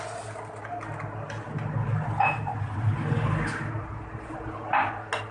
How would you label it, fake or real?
real